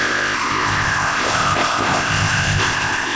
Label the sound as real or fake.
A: fake